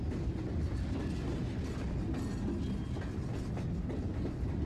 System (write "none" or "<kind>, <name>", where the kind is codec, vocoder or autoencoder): none